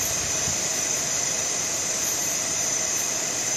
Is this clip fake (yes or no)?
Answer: yes